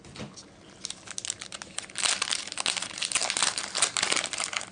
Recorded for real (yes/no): yes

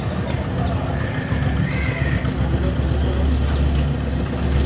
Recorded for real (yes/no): yes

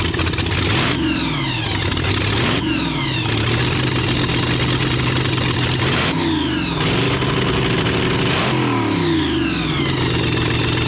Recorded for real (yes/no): yes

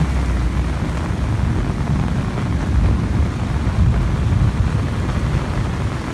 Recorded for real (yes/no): yes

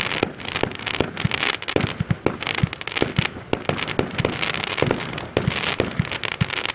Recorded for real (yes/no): yes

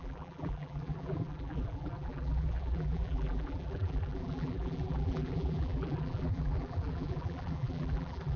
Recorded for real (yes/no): no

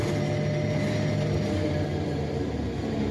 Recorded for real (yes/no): yes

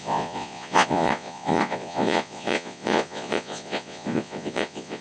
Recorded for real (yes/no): no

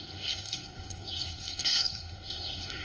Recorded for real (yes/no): no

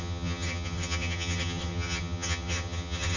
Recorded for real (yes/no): no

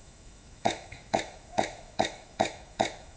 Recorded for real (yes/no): no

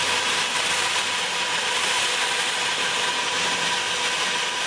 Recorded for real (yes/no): yes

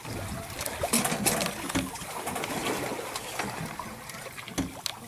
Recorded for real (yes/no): yes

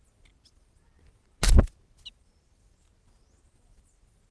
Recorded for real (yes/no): yes